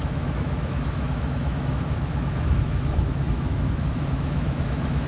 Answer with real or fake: fake